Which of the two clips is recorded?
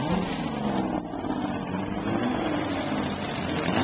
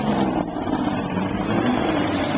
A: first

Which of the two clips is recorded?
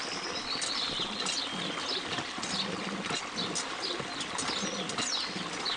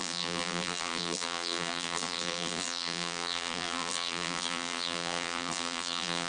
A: first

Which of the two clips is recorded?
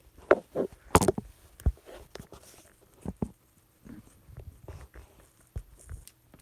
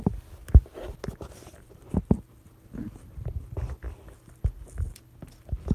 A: second